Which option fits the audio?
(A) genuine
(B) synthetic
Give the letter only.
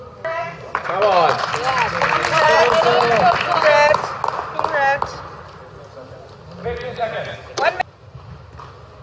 A